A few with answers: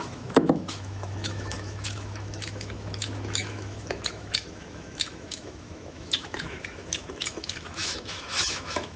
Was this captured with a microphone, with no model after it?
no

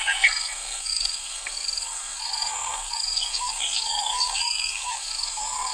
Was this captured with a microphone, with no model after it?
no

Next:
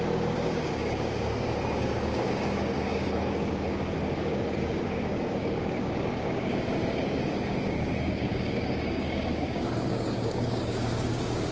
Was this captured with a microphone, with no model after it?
no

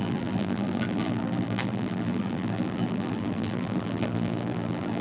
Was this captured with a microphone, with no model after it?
no